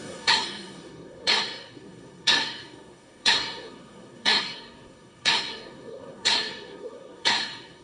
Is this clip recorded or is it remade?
remade